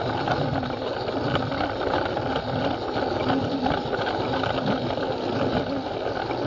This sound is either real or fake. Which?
real